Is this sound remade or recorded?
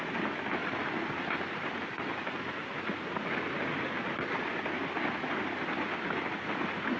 recorded